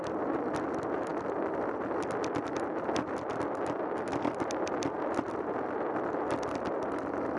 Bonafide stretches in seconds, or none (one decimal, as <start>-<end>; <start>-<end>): 0.0-7.4